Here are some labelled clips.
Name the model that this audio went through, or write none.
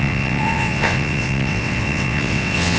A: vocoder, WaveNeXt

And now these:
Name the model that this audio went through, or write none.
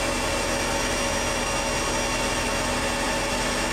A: none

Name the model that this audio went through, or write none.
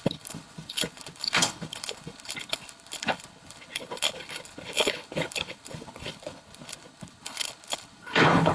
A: codec, HILCodec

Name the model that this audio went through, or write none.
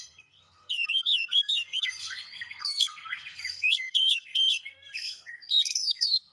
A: codec, SNAC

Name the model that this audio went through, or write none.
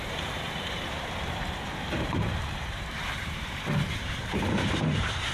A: vocoder, BigVGAN v2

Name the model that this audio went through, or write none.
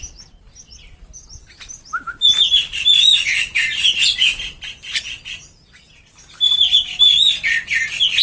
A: none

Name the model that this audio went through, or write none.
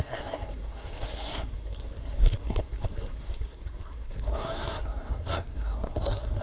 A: codec, SNAC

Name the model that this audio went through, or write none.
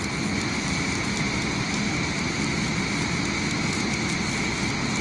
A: none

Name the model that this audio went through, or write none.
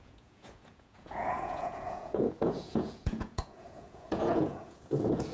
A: vocoder, Vocos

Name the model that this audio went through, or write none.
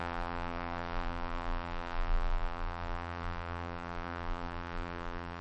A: vocoder, BigVGAN v2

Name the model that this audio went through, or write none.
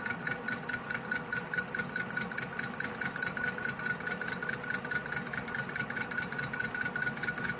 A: none